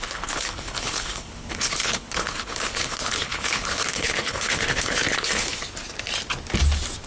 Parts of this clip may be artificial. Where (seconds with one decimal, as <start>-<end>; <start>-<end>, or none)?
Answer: 0.0-5.6